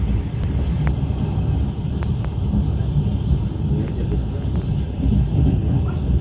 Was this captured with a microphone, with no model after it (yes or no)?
yes